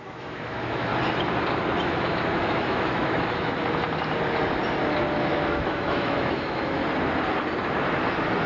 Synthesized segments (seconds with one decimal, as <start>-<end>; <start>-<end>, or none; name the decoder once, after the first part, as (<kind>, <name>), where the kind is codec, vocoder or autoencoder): 0.0-0.9 (autoencoder, DAC-VAE); 1.8-3.6; 5.3-6.8